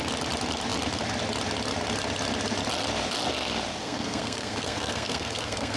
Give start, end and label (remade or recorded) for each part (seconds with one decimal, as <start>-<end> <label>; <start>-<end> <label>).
0.0-3.8 recorded; 3.8-5.8 remade